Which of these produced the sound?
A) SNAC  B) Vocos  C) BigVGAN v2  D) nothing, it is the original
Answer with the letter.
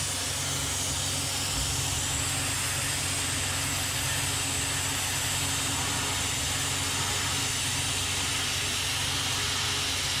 D